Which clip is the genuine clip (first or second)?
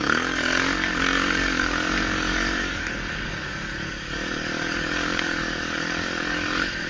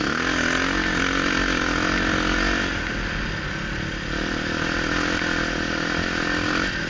second